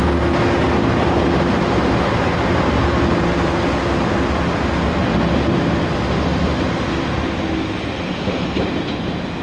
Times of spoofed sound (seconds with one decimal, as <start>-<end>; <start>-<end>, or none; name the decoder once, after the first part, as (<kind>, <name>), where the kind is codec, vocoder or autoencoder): none